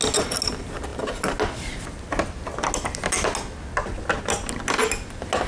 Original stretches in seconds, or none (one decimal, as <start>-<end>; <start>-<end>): 0.0-5.5